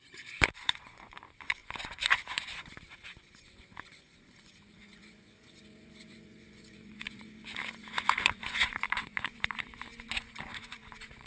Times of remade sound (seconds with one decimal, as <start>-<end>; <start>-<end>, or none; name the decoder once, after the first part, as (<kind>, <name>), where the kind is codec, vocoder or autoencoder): 0.0-11.3 (vocoder, Vocos)